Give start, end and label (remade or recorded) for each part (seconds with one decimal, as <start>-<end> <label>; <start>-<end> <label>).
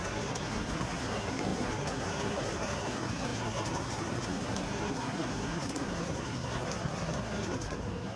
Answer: 0.0-8.2 remade